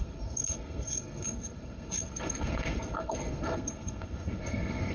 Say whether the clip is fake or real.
fake